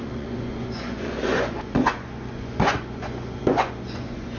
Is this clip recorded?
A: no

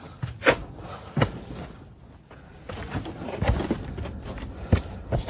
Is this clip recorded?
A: yes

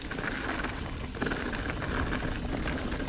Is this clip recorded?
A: yes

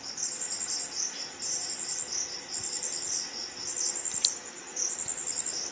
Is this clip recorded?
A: yes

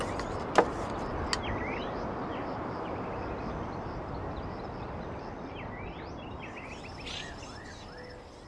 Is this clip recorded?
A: yes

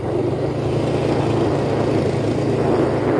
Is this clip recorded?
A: yes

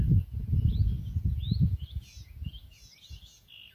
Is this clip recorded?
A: no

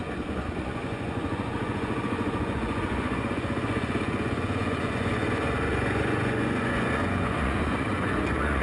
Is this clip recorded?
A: no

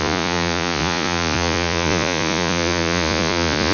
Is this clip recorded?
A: no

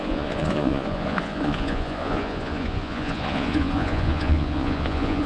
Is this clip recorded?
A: no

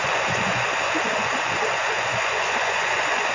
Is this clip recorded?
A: no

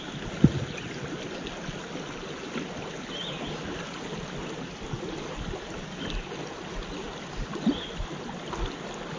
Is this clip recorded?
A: yes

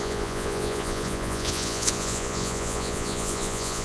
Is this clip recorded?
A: no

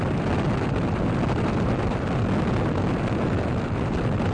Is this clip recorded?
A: yes